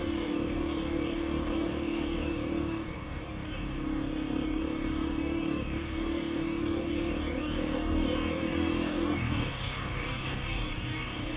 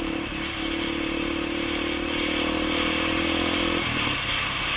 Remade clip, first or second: first